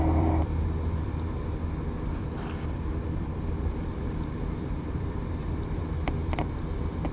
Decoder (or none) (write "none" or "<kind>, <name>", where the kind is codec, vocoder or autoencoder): vocoder, BigVGAN v2